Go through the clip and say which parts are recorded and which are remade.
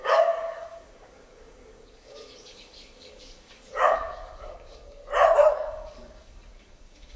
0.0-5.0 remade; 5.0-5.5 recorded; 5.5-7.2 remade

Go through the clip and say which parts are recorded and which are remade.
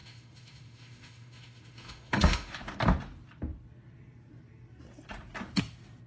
0.0-2.5 remade; 2.5-6.1 recorded